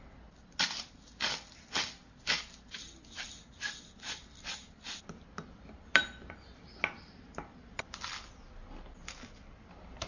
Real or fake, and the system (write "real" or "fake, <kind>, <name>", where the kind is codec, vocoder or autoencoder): real